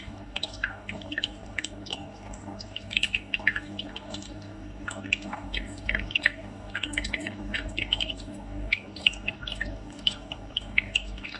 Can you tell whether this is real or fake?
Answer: fake